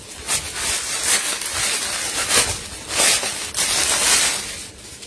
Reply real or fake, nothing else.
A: real